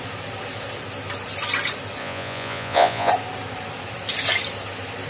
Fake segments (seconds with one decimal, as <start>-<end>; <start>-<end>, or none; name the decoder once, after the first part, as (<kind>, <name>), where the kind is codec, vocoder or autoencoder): 2.0-3.1 (vocoder, Vocos)